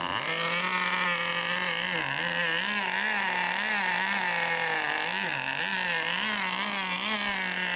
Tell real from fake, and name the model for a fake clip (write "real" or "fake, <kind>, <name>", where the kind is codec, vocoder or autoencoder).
real